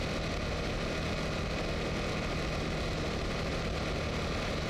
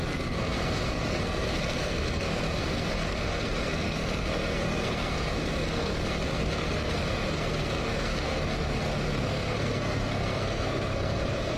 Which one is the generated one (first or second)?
second